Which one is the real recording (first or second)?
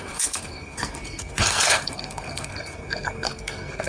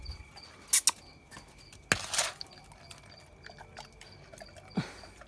second